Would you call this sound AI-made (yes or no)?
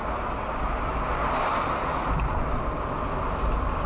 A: no